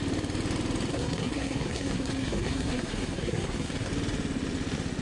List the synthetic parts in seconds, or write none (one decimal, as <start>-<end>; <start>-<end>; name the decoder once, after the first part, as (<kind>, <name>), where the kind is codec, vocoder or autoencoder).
0.9-3.9 (codec, SNAC)